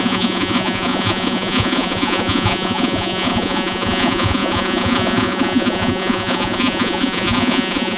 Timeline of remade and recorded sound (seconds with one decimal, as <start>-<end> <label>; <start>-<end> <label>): 0.0-8.0 remade